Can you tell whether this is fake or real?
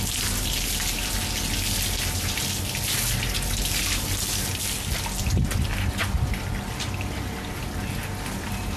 real